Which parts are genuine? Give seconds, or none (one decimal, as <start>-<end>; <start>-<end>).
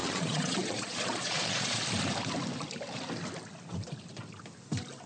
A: 1.8-5.1